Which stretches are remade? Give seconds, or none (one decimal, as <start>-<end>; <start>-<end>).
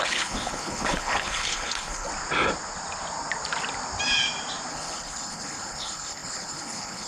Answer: 0.0-2.1; 4.7-7.1